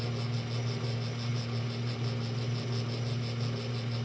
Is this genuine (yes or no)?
yes